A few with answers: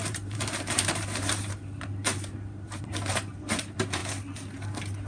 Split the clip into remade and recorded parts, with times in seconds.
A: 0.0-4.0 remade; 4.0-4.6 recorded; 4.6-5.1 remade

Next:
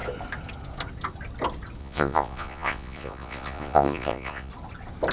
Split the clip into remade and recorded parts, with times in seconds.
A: 0.0-1.8 recorded; 1.8-4.5 remade; 4.5-5.1 recorded